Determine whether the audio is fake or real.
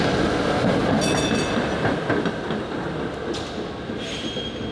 real